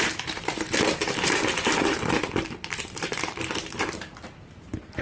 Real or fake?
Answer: fake